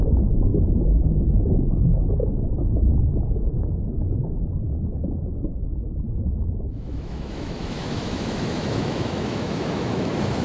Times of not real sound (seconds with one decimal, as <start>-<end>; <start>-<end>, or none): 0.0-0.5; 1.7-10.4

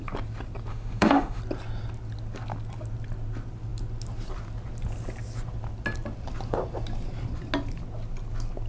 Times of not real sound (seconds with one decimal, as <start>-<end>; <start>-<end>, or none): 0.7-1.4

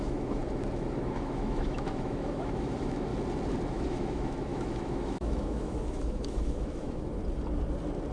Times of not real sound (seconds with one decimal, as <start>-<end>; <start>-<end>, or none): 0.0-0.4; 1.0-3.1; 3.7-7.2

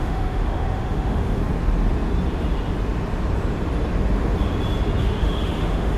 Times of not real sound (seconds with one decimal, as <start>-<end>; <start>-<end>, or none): 0.0-1.4; 5.0-6.0